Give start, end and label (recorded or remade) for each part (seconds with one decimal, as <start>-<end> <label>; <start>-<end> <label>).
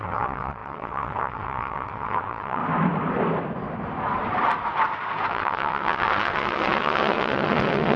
0.0-2.6 remade; 2.6-5.3 recorded; 5.3-8.0 remade